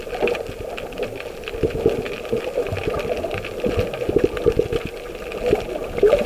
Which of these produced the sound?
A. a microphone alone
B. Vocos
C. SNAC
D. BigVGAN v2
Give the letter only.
A